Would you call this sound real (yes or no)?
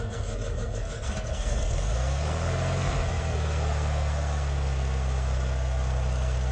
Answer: no